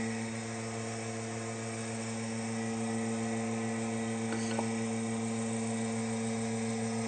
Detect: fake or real real